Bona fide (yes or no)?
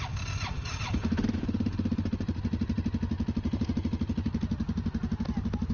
yes